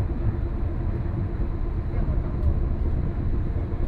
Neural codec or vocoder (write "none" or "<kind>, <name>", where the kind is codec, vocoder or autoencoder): none